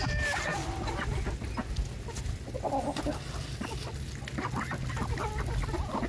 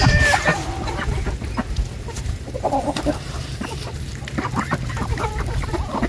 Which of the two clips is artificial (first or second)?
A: second